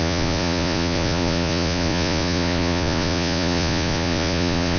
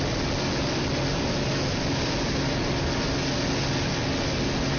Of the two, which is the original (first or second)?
second